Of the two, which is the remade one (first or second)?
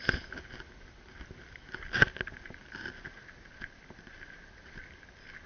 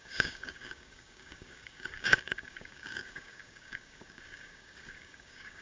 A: second